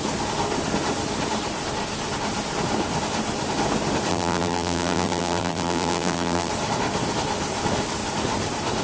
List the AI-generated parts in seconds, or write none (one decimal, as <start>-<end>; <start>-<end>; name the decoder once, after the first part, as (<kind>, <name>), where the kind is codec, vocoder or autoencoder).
4.1-6.5 (vocoder, BigVGAN v2)